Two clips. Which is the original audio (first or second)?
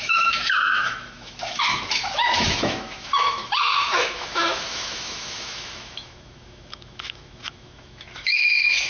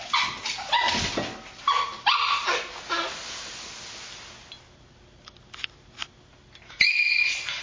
second